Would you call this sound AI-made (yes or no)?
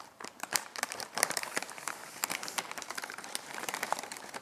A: yes